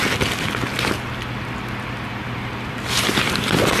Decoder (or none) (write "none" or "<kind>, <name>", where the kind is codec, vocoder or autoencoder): none